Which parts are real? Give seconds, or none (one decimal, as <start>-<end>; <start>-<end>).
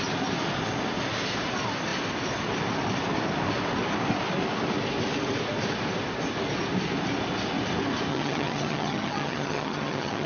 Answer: 0.0-8.1